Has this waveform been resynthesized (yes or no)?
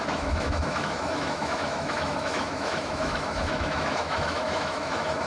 yes